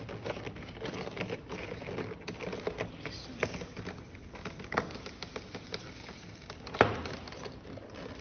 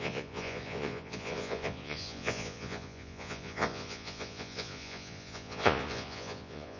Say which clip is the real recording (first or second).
first